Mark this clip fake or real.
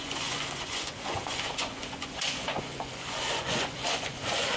fake